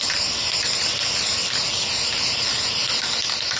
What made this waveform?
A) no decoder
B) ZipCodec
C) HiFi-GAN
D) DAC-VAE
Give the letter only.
A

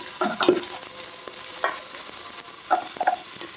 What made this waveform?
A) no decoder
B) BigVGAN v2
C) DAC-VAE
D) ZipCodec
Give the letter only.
A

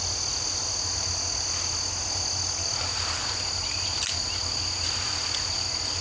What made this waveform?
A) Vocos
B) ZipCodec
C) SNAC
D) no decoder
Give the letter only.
D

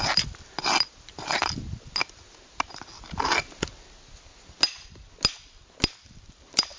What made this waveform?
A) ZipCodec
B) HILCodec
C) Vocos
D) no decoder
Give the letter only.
D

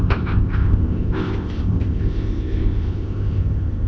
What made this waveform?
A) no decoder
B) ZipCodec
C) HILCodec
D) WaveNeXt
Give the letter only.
B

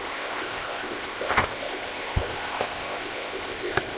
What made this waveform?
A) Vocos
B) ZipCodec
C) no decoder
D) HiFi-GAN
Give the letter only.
B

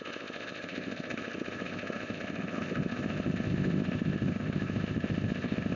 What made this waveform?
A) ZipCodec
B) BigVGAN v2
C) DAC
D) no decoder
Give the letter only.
A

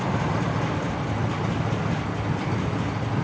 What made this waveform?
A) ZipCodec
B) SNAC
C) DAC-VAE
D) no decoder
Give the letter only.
D